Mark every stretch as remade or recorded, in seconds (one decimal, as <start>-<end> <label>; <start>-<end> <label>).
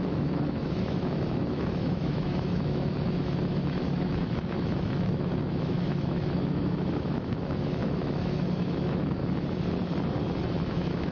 0.0-9.2 remade; 9.2-10.7 recorded; 10.7-11.1 remade